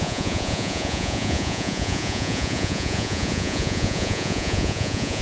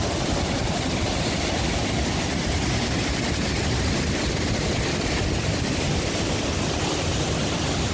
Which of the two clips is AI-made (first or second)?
first